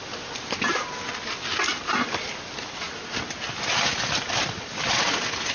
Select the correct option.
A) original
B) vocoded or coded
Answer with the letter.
A